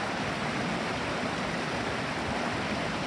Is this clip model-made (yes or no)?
yes